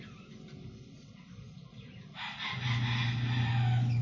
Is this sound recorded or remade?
recorded